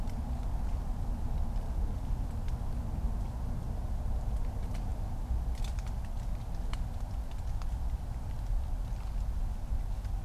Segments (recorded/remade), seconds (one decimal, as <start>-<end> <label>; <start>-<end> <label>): 0.0-10.2 recorded